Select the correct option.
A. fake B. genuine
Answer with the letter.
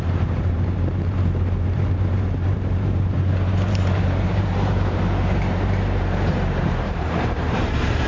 A